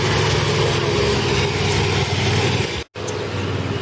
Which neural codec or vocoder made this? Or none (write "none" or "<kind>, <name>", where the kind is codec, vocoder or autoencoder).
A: none